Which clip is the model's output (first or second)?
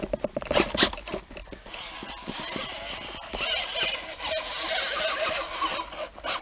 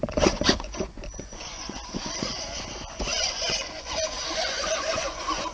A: second